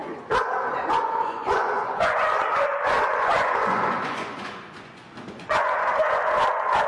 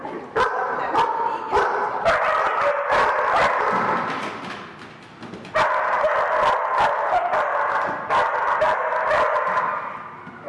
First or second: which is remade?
first